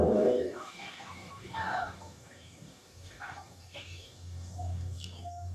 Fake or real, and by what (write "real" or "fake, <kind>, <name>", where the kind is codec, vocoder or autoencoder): fake, codec, DAC